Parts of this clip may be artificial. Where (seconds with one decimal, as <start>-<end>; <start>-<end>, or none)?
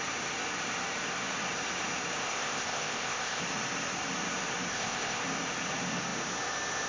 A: 2.2-3.4; 4.7-5.2